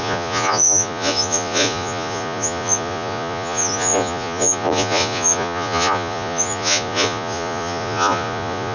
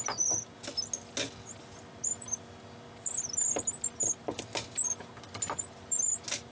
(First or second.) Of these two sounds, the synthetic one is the first